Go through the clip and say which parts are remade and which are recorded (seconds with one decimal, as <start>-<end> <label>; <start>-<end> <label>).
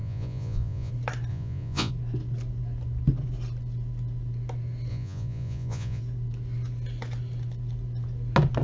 0.0-0.9 remade; 0.9-1.3 recorded; 1.3-1.9 remade; 1.9-4.9 recorded; 4.9-6.0 remade; 6.0-8.6 recorded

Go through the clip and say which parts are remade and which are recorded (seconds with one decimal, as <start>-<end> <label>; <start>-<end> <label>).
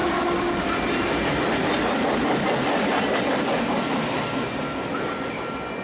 0.0-5.8 recorded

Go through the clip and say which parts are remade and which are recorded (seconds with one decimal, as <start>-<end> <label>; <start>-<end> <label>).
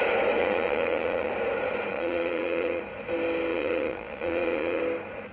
0.0-0.4 recorded; 0.4-1.3 remade; 1.3-1.9 recorded; 1.9-2.8 remade; 2.8-3.5 recorded; 3.5-4.8 remade; 4.8-5.3 recorded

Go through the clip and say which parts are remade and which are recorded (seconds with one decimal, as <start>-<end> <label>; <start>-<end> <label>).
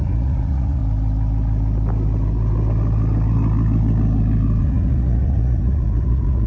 0.0-0.8 remade; 0.8-4.6 recorded; 4.6-6.5 remade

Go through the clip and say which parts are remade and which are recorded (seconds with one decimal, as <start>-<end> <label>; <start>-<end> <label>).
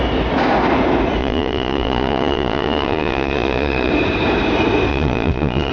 0.0-1.2 recorded; 1.2-3.9 remade; 3.9-4.9 recorded; 4.9-5.7 remade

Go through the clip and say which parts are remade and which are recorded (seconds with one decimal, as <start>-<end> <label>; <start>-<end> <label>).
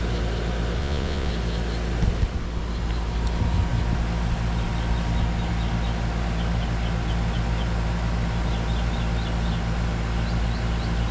0.0-0.8 recorded; 0.8-1.3 remade; 1.3-11.1 recorded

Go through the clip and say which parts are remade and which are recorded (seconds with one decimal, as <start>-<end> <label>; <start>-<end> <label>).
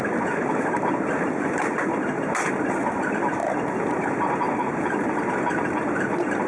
0.0-6.5 recorded